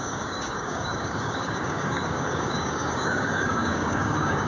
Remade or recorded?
remade